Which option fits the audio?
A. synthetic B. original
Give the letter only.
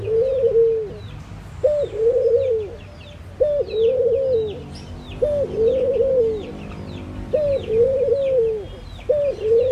B